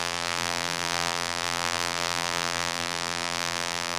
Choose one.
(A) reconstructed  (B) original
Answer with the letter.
A